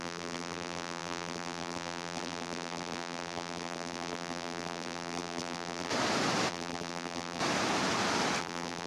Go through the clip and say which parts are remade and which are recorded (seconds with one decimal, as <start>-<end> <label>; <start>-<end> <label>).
0.0-5.9 remade; 5.9-6.5 recorded; 6.5-7.4 remade; 7.4-8.4 recorded; 8.4-8.9 remade